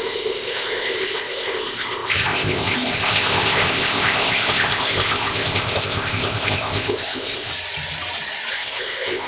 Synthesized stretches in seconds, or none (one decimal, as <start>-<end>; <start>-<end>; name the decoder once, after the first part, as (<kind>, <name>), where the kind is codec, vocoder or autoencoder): 0.0-7.5 (codec, ZipCodec); 8.5-9.3